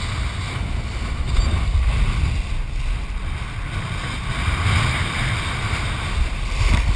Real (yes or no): yes